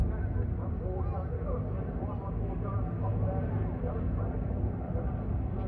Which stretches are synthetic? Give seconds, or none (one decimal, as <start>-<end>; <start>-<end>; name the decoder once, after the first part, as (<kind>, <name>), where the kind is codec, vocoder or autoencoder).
none